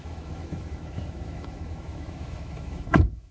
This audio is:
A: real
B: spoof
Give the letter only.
B